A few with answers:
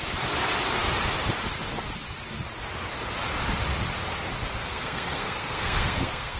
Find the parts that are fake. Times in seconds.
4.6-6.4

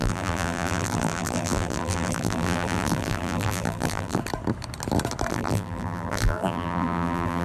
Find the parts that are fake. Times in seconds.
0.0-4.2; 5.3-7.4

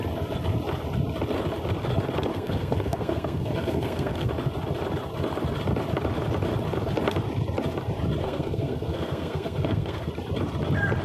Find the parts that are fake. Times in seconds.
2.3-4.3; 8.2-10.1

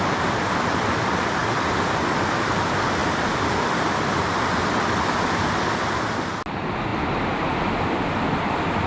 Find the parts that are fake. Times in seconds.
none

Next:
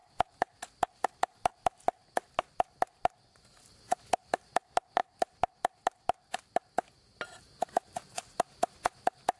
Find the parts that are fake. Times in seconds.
none

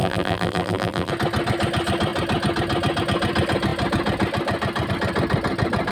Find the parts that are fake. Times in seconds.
0.0-1.1

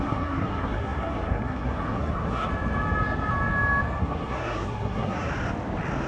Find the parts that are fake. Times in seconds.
0.0-2.5; 4.0-5.3

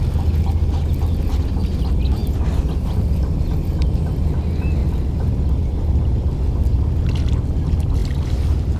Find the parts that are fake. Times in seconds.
2.2-3.2